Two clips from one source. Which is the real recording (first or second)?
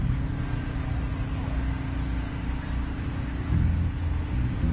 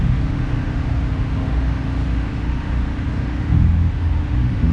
first